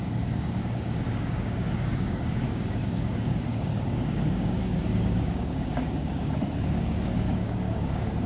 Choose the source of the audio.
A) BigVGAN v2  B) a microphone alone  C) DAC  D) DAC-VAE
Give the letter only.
C